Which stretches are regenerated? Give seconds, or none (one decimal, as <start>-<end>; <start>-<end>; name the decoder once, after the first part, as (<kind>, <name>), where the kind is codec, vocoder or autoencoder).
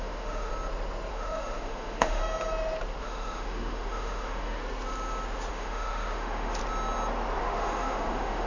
0.0-0.5 (autoencoder, DAC-VAE); 1.1-2.2; 3.0-4.6; 5.5-6.6; 7.4-8.5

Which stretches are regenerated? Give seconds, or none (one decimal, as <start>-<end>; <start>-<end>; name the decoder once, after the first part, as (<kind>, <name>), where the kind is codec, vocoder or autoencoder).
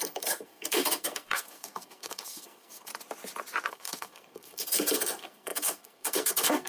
0.0-2.9 (codec, SNAC); 3.7-6.7